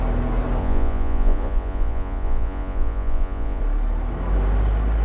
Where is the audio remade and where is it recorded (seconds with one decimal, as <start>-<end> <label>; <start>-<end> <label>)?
0.0-0.6 recorded; 0.6-3.6 remade; 3.6-5.0 recorded